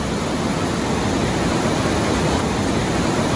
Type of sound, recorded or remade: recorded